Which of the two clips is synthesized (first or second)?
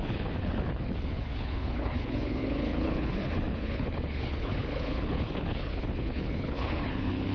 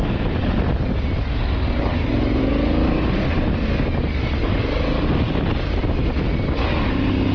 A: first